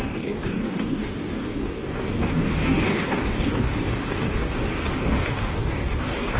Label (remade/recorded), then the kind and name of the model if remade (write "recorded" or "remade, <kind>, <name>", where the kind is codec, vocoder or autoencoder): remade, codec, DAC